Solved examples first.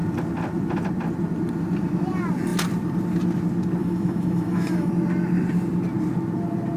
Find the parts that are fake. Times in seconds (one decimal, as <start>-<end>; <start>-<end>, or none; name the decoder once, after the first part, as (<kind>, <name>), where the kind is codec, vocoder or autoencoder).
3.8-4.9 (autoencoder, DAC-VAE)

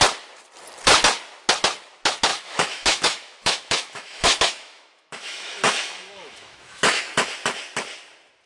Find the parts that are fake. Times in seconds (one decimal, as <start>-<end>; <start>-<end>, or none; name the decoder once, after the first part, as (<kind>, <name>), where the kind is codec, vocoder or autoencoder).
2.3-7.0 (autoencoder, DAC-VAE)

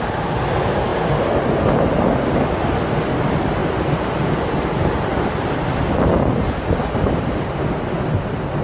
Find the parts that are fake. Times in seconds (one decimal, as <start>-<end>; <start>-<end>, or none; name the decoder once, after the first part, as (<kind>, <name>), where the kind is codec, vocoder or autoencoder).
none

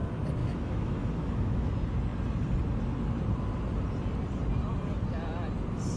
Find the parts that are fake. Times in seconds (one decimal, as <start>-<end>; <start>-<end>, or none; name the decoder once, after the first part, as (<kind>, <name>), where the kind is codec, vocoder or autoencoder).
0.4-1.7 (autoencoder, DAC-VAE)